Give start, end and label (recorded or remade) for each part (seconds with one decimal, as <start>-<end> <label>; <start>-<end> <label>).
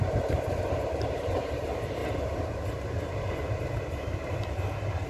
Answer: 0.0-2.0 remade; 2.0-2.8 recorded; 2.8-5.1 remade